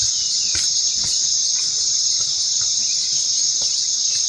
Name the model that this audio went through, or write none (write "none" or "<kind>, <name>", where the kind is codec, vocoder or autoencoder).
vocoder, BigVGAN v2